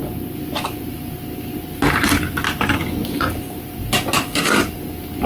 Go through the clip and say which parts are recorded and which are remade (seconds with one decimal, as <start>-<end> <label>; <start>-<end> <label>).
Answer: 0.0-5.3 recorded